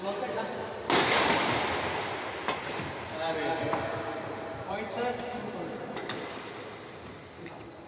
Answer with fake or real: real